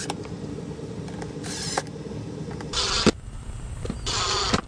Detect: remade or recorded recorded